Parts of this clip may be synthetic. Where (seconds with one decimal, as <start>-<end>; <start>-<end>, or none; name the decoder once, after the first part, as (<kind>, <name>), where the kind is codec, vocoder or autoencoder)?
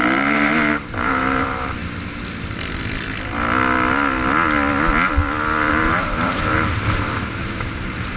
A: 0.0-1.8 (vocoder, BigVGAN v2); 5.7-8.2